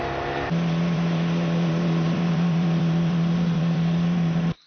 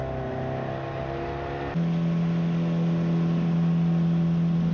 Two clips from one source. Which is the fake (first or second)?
first